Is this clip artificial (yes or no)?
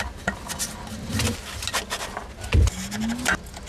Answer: no